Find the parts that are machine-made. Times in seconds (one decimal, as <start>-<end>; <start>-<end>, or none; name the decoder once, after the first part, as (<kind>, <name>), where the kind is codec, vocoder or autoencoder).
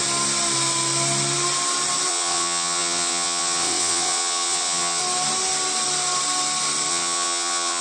2.1-5.0 (vocoder, WaveNeXt); 6.9-7.8